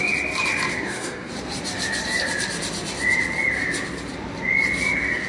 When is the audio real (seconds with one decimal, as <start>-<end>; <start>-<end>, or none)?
0.0-0.7; 1.3-5.3